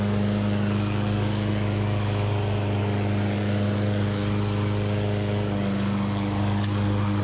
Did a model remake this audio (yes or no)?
yes